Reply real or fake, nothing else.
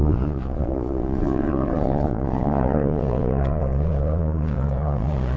fake